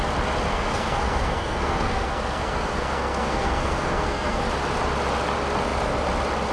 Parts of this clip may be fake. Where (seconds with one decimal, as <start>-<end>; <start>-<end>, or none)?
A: 0.5-4.4